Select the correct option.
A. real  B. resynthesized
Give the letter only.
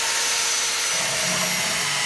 A